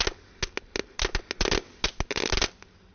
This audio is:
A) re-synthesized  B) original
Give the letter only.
B